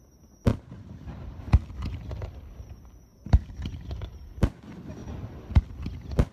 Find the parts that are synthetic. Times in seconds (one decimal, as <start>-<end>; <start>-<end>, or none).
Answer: 0.5-1.4; 3.1-4.1; 5.0-5.6